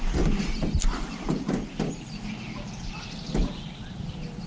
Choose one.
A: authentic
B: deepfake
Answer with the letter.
A